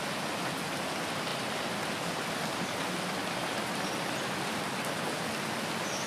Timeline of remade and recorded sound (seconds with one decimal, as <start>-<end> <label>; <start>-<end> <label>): 0.0-6.1 recorded